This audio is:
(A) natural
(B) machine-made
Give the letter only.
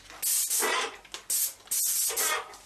A